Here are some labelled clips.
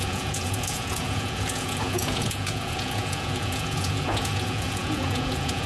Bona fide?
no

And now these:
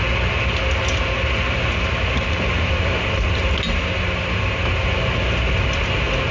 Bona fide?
yes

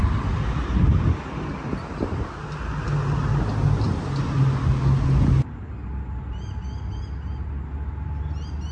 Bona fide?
yes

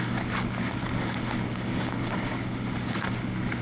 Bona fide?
no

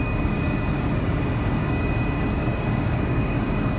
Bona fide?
no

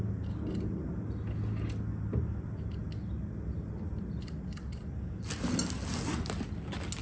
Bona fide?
yes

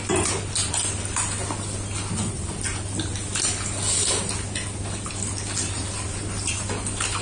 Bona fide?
yes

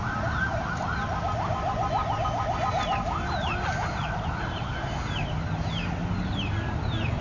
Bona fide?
yes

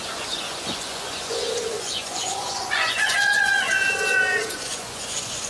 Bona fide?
no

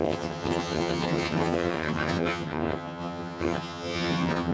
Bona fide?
no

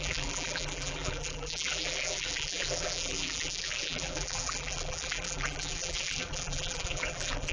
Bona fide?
no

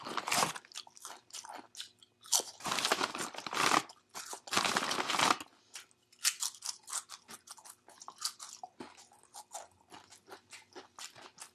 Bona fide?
yes